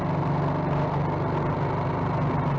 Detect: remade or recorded recorded